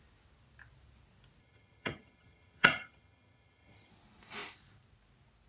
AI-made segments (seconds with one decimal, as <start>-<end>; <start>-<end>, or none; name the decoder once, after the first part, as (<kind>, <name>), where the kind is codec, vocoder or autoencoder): 1.4-3.9 (vocoder, HiFi-GAN)